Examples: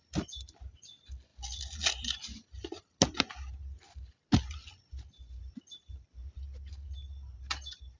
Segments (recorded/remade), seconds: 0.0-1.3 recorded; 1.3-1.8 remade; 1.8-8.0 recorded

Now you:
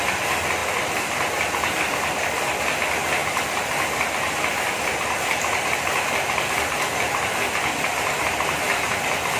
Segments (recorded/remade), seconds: 0.0-9.4 recorded

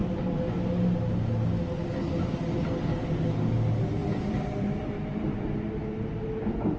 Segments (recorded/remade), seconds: 0.0-4.0 recorded; 4.0-5.7 remade; 5.7-6.8 recorded

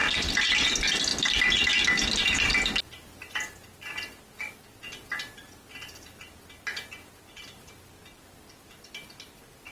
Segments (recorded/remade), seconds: 0.0-0.5 remade; 0.5-9.7 recorded

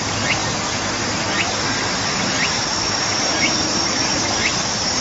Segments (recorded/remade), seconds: 0.0-5.0 recorded

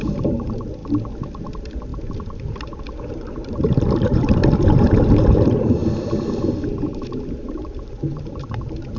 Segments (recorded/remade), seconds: 0.0-0.8 remade; 0.8-1.5 recorded; 1.5-5.8 remade; 5.8-6.9 recorded; 6.9-9.0 remade

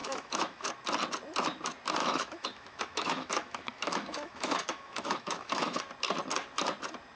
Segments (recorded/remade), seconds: 0.0-0.7 remade; 0.7-2.0 recorded; 2.0-5.8 remade; 5.8-7.2 recorded